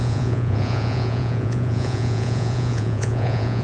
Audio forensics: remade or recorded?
remade